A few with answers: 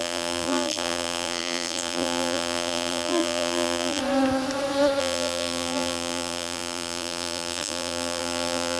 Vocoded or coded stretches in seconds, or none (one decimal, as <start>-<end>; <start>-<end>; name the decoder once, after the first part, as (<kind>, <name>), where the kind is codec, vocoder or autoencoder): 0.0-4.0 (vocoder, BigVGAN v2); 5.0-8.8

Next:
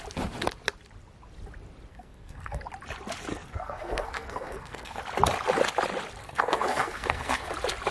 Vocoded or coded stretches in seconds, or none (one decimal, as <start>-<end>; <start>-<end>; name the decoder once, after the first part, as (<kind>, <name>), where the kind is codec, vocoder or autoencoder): 1.9-2.6 (codec, SNAC); 3.3-5.0; 6.2-7.5

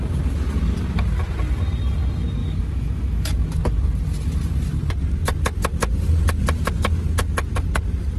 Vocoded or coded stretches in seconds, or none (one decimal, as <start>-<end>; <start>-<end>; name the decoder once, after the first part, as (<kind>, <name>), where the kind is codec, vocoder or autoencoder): 2.4-3.3 (autoencoder, DAC-VAE)

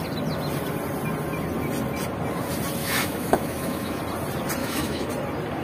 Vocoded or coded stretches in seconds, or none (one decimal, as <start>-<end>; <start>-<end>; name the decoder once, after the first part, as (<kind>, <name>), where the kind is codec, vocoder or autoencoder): 2.8-4.0 (autoencoder, DAC-VAE); 4.6-5.1

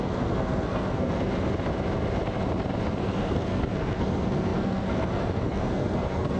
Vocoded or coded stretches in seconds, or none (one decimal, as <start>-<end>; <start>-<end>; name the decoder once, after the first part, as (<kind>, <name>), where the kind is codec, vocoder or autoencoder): 0.0-1.3 (codec, SNAC); 3.0-6.4